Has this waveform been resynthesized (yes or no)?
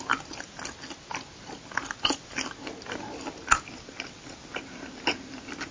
no